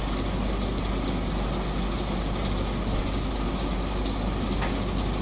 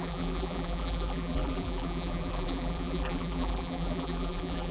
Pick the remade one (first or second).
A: second